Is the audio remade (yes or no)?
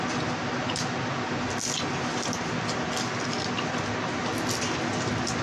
no